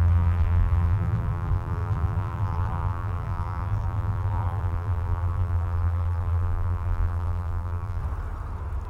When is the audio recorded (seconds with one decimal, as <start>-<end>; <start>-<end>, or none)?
8.0-8.9